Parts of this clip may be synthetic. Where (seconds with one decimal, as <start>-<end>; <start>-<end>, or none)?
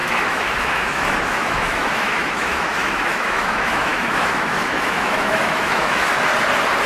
0.0-6.1